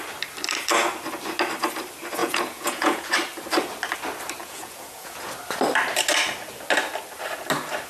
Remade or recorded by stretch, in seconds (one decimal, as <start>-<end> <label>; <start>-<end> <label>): 0.0-2.2 recorded; 2.2-3.1 remade; 3.1-4.4 recorded; 4.4-5.3 remade; 5.3-7.9 recorded

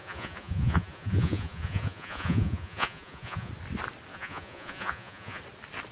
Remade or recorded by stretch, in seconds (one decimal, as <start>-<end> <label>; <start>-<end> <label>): 0.0-3.5 remade; 3.5-4.1 recorded; 4.1-5.4 remade; 5.4-5.9 recorded